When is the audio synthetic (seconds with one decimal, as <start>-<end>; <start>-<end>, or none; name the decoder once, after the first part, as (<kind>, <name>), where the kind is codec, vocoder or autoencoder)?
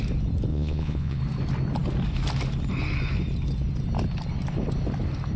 0.5-1.2 (vocoder, Vocos)